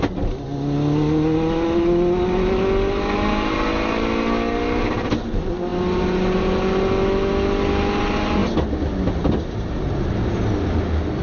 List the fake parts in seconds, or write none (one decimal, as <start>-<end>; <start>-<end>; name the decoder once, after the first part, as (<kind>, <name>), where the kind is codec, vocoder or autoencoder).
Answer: none